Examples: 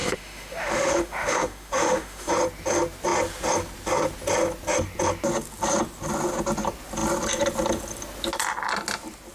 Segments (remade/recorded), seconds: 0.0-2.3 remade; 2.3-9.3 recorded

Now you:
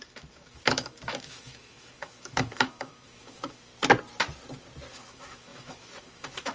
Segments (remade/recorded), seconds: 0.0-3.7 remade; 3.7-4.9 recorded; 4.9-6.5 remade

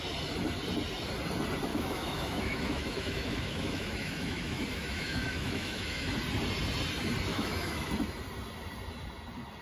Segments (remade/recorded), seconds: 0.0-1.7 recorded; 1.7-6.1 remade; 6.1-7.3 recorded; 7.3-7.9 remade; 7.9-9.6 recorded

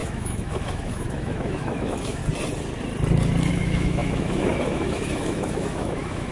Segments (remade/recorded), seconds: 0.0-2.2 remade; 2.2-3.5 recorded; 3.5-6.3 remade

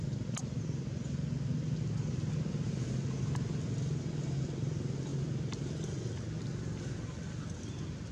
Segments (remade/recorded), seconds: 0.0-8.1 recorded

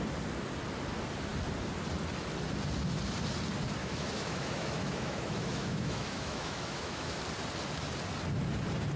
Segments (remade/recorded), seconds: 0.0-3.8 recorded; 3.8-7.2 remade; 7.2-9.0 recorded

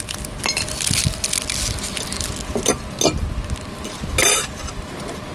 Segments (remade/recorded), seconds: 0.0-5.3 recorded